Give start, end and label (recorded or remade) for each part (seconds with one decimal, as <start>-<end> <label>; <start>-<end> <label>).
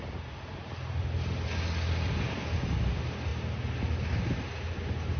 0.0-5.2 recorded